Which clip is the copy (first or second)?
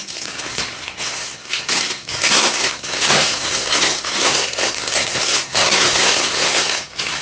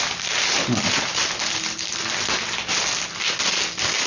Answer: first